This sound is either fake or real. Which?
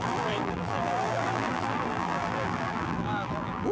fake